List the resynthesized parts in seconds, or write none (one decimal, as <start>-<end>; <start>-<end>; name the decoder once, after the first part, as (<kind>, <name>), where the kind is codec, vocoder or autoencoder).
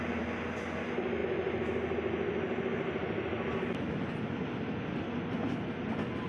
none